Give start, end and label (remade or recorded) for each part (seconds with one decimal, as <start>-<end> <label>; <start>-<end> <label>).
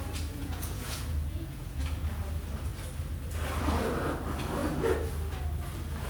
0.0-0.4 recorded; 0.4-1.8 remade; 1.8-6.1 recorded